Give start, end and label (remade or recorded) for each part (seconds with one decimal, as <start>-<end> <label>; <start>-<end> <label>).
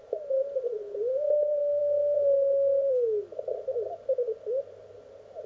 0.0-5.5 recorded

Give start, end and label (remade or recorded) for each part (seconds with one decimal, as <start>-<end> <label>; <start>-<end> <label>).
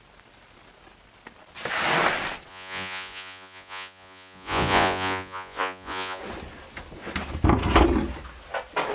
0.0-2.5 recorded; 2.5-6.2 remade; 6.2-8.9 recorded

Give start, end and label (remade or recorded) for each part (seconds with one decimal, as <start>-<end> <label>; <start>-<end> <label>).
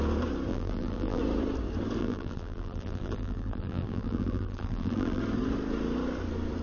0.0-0.5 recorded; 0.5-1.2 remade; 1.2-2.0 recorded; 2.0-5.2 remade; 5.2-6.6 recorded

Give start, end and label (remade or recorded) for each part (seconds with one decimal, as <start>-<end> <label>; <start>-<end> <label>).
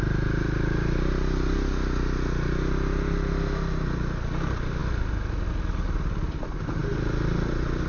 0.0-7.9 recorded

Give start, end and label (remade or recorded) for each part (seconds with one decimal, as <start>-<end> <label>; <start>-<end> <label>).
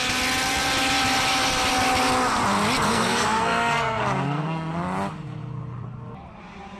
0.0-2.8 recorded; 2.8-4.7 remade; 4.7-6.8 recorded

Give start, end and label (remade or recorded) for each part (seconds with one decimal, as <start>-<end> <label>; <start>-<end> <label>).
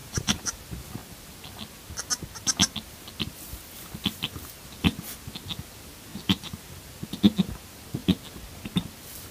0.0-0.6 remade; 0.6-6.1 recorded; 6.1-6.7 remade; 6.7-9.3 recorded